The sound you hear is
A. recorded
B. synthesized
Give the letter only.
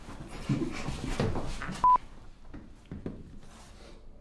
A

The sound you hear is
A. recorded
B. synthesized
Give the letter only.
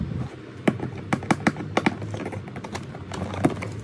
A